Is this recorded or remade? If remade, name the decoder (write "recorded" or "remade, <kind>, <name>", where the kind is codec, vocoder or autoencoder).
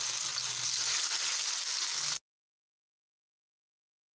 recorded